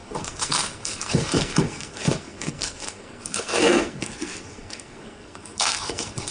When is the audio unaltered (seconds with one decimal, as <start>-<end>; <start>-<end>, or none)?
none